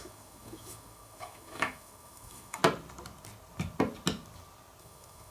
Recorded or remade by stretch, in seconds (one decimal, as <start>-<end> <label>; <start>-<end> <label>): 0.0-2.6 remade; 2.6-4.8 recorded; 4.8-5.3 remade